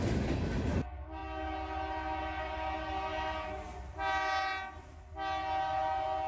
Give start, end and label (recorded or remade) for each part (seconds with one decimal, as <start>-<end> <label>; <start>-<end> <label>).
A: 0.0-6.3 recorded